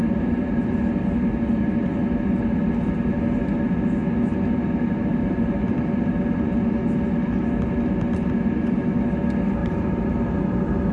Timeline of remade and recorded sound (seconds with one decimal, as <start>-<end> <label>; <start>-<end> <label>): 0.0-0.6 remade; 0.6-5.1 recorded; 5.1-6.1 remade; 6.1-9.6 recorded; 9.6-10.1 remade; 10.1-10.9 recorded